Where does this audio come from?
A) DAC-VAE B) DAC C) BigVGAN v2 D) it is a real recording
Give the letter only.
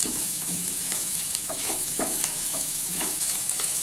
A